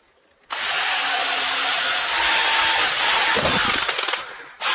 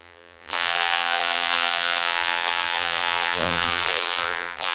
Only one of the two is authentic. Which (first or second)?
first